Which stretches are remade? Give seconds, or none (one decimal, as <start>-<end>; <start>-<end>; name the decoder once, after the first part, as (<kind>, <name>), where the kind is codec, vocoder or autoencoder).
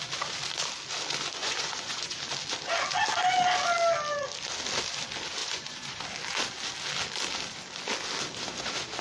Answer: 1.4-2.2 (vocoder, Vocos); 5.4-6.0